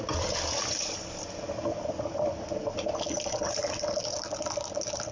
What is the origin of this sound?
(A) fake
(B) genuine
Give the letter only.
B